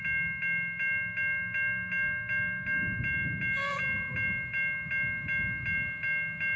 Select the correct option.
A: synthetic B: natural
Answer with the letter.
B